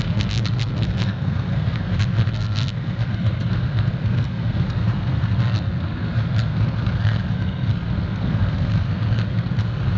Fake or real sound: fake